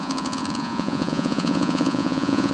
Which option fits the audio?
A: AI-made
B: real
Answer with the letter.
A